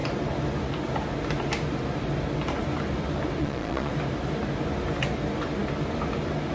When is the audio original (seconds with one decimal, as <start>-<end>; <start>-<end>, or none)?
0.0-3.4; 3.9-6.5